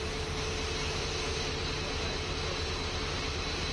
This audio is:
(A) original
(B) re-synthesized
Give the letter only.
A